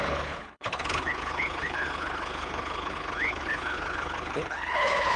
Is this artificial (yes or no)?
yes